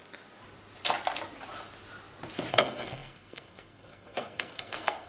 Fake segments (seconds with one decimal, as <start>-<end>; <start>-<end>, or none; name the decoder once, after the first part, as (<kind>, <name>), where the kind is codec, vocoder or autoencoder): 2.5-5.1 (codec, SNAC)